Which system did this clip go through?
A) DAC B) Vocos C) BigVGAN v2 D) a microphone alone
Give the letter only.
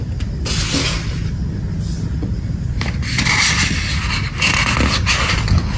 D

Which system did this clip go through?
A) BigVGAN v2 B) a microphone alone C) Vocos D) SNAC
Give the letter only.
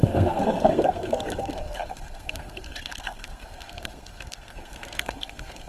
D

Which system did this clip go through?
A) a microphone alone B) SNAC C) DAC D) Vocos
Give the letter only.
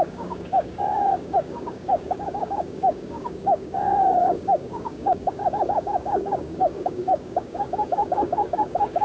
C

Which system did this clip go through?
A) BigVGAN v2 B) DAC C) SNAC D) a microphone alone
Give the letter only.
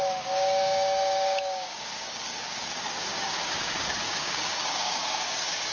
B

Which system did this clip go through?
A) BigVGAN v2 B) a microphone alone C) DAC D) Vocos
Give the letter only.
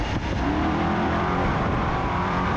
A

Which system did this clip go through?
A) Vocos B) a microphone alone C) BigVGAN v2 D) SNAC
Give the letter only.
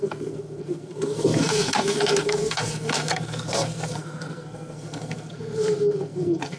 D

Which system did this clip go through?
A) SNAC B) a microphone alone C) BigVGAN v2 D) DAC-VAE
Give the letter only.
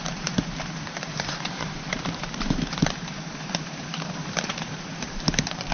C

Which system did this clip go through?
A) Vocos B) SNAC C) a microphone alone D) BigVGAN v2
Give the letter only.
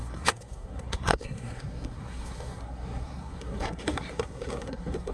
B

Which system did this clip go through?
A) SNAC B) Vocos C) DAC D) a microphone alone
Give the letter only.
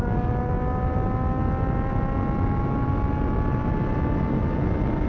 D